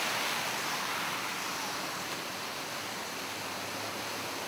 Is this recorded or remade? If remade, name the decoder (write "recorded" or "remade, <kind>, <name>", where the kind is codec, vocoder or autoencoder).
recorded